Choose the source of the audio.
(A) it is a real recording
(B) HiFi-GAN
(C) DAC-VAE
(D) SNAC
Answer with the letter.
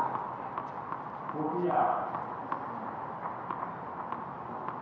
A